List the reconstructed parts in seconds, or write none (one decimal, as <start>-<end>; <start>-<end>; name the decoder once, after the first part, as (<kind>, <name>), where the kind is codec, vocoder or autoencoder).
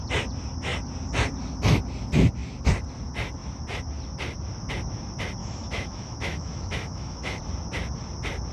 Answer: 5.4-7.4 (autoencoder, DAC-VAE)